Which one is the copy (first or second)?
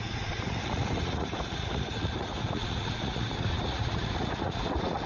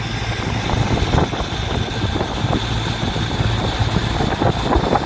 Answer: first